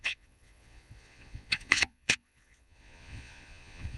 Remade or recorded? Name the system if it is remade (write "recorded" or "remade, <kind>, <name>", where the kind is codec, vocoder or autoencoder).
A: remade, vocoder, Vocos